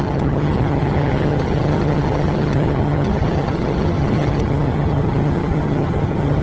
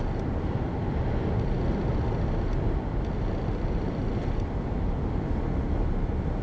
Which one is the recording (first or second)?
second